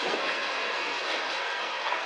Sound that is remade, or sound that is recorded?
remade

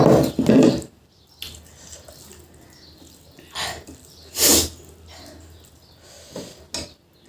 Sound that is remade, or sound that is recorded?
recorded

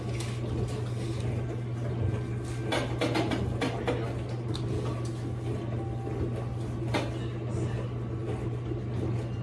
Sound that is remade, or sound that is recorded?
recorded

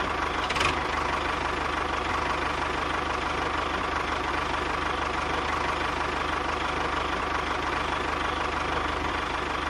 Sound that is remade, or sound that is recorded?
recorded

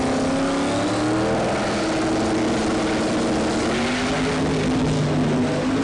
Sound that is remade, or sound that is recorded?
recorded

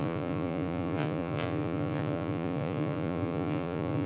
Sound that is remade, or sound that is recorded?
remade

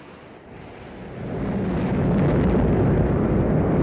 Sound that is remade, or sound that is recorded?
recorded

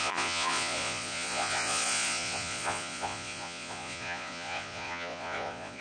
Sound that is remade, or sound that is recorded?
remade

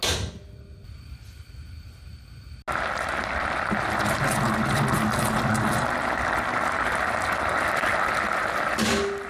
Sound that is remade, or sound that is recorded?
recorded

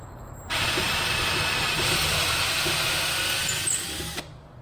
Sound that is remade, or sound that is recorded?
recorded